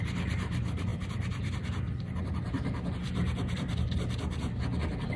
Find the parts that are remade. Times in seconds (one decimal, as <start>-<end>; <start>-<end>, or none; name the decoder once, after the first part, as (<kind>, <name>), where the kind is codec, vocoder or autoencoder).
none